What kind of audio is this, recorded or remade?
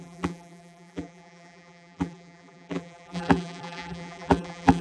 remade